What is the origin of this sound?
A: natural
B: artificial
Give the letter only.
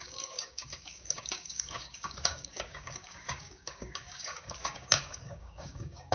B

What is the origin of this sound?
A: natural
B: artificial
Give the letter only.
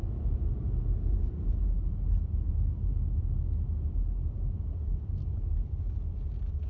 A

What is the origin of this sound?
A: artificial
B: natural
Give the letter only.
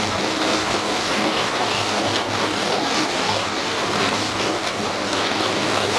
A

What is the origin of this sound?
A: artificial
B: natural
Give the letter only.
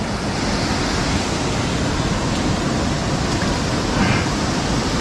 B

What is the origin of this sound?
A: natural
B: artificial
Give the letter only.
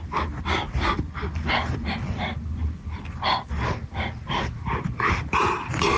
A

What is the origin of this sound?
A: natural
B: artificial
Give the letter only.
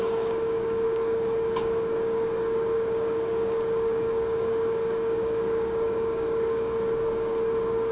B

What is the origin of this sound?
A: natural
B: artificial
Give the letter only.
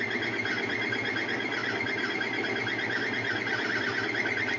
A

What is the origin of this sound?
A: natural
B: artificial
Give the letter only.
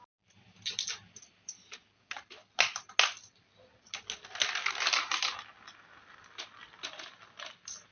A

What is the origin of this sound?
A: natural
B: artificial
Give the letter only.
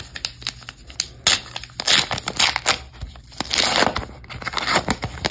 A